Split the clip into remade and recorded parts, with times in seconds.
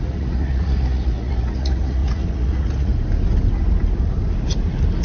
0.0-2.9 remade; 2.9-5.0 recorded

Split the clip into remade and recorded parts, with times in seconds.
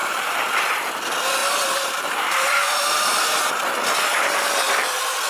0.0-0.6 remade; 0.6-1.4 recorded; 1.4-3.4 remade; 3.4-5.3 recorded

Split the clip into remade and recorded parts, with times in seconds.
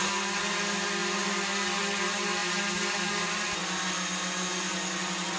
0.0-2.4 recorded; 2.4-3.1 remade; 3.1-3.6 recorded; 3.6-4.7 remade; 4.7-5.4 recorded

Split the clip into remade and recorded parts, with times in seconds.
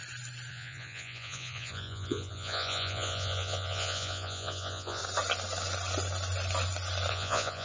0.0-0.5 recorded; 0.5-5.0 remade; 5.0-7.1 recorded; 7.1-7.6 remade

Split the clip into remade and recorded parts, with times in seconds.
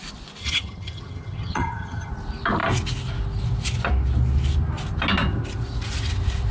0.0-0.4 recorded; 0.4-2.1 remade; 2.1-6.5 recorded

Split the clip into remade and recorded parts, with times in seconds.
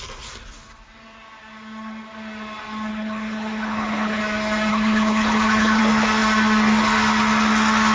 0.0-2.9 recorded; 2.9-4.2 remade; 4.2-4.7 recorded; 4.7-5.8 remade; 5.8-7.9 recorded